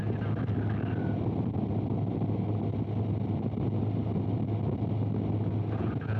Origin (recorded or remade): recorded